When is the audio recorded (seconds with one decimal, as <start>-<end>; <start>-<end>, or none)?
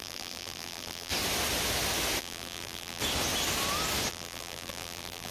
1.1-2.2; 3.0-4.1